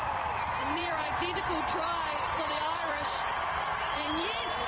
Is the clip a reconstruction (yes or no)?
yes